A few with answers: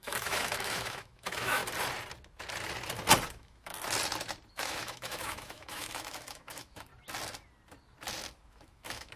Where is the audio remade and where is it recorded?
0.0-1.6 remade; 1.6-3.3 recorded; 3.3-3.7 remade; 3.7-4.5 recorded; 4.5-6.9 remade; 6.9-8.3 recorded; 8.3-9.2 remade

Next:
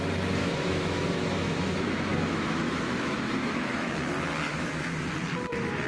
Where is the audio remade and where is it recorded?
0.0-0.4 recorded; 0.4-3.9 remade; 3.9-4.5 recorded; 4.5-5.1 remade; 5.1-5.9 recorded

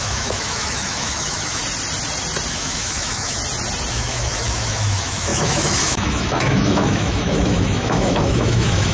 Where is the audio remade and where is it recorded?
0.0-1.6 remade; 1.6-2.5 recorded; 2.5-3.4 remade; 3.4-3.9 recorded; 3.9-8.9 remade

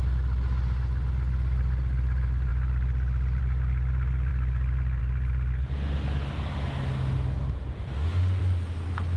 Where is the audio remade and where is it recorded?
0.0-7.7 recorded; 7.7-8.4 remade; 8.4-9.2 recorded

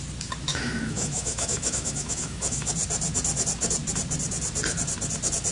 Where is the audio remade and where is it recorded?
0.0-0.5 recorded; 0.5-2.7 remade; 2.7-5.5 recorded

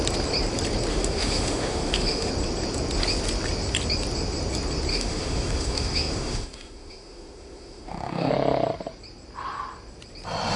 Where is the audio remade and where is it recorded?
0.0-0.9 recorded; 0.9-2.3 remade; 2.3-4.9 recorded; 4.9-8.3 remade; 8.3-10.6 recorded

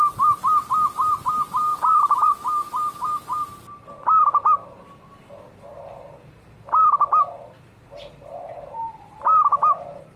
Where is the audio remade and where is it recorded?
0.0-10.2 recorded

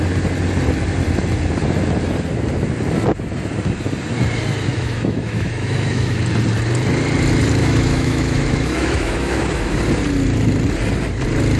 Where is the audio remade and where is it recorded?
0.0-4.7 recorded; 4.7-6.2 remade; 6.2-7.6 recorded; 7.6-9.8 remade; 9.8-11.6 recorded